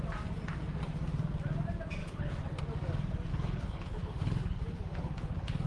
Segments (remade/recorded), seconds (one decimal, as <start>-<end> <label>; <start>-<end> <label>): 0.0-2.0 recorded; 2.0-2.6 remade; 2.6-3.3 recorded; 3.3-5.7 remade